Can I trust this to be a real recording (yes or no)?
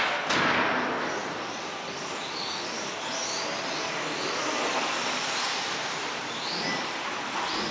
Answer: yes